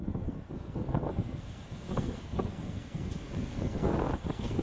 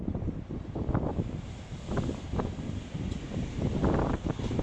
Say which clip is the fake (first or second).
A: first